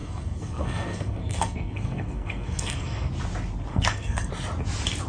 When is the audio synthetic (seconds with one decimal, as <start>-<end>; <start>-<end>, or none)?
0.0-3.1; 3.7-4.3